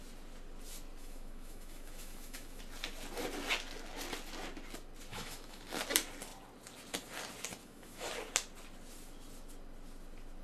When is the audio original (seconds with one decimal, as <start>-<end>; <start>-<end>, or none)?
0.0-1.0; 2.6-5.1; 5.6-7.6; 8.1-10.4